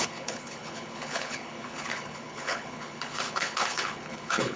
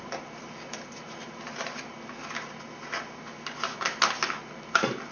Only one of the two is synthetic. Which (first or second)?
first